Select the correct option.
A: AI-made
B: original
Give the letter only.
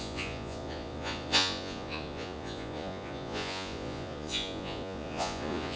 A